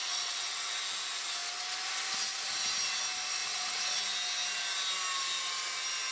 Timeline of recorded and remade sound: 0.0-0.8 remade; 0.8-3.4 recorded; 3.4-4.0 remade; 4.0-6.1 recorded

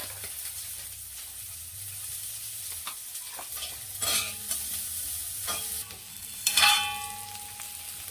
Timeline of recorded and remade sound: 0.0-6.1 recorded; 6.1-6.7 remade; 6.7-8.1 recorded

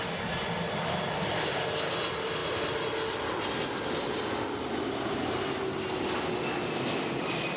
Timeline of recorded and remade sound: 0.0-7.6 recorded

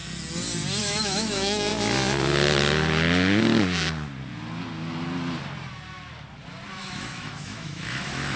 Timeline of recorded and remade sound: 0.0-0.8 recorded; 0.8-1.7 remade; 1.7-6.7 recorded; 6.7-8.4 remade

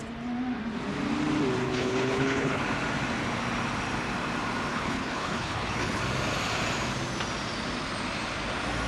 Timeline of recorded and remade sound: 0.0-1.6 recorded; 1.6-2.6 remade; 2.6-4.7 recorded; 4.7-6.0 remade; 6.0-8.9 recorded

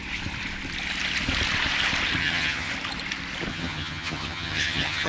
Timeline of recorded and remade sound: 0.0-2.2 recorded; 2.2-2.7 remade; 2.7-3.5 recorded; 3.5-5.1 remade

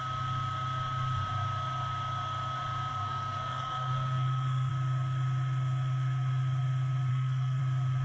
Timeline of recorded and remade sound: 0.0-2.9 recorded; 2.9-4.7 remade; 4.7-7.1 recorded; 7.1-7.6 remade; 7.6-8.0 recorded

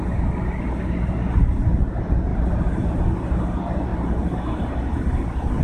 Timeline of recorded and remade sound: 0.0-2.3 recorded; 2.3-3.0 remade; 3.0-5.6 recorded